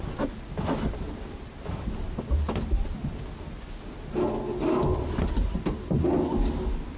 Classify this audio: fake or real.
real